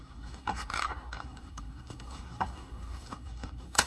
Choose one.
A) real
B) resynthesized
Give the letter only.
B